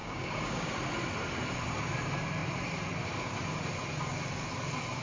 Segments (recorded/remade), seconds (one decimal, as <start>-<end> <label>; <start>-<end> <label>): 0.0-0.7 remade; 0.7-5.0 recorded